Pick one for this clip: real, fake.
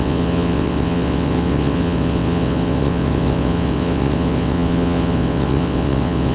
fake